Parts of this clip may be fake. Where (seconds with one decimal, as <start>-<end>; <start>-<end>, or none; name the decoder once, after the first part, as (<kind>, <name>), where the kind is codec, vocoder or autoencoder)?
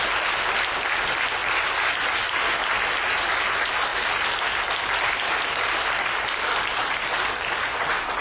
none